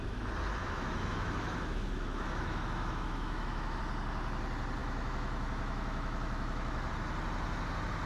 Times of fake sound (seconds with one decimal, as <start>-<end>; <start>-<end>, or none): 0.6-3.8; 4.8-6.9